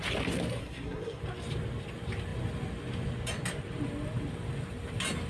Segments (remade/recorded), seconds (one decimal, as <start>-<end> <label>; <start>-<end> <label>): 0.0-0.6 recorded; 0.6-1.2 remade; 1.2-5.3 recorded

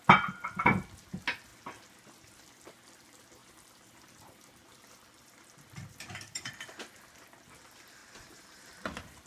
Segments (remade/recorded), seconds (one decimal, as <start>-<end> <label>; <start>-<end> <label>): 0.0-3.4 recorded; 3.4-6.5 remade; 6.5-8.0 recorded; 8.0-9.3 remade

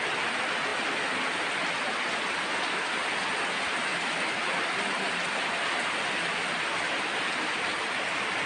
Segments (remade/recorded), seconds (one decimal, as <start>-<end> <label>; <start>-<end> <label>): 0.0-8.5 recorded

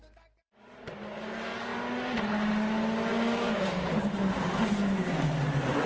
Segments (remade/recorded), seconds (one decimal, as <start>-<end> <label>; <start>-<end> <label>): 0.0-3.1 recorded; 3.1-3.9 remade; 3.9-5.9 recorded

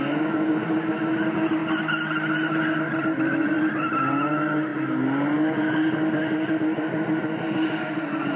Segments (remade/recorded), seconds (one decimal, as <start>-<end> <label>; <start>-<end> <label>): 0.0-8.4 recorded

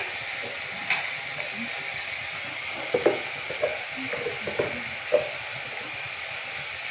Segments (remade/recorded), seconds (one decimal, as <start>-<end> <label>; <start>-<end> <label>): 0.0-6.9 recorded

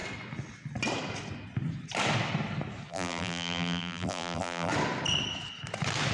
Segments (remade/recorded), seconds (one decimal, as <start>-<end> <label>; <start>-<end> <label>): 0.0-2.9 recorded; 2.9-4.7 remade; 4.7-6.1 recorded

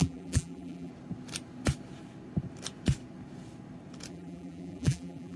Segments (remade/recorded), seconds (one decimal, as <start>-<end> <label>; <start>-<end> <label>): 0.0-0.9 remade; 0.9-4.1 recorded; 4.1-5.4 remade